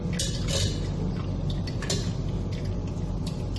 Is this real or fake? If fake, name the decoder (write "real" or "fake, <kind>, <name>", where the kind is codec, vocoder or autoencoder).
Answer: real